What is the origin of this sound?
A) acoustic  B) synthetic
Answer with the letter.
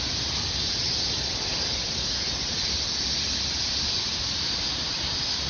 A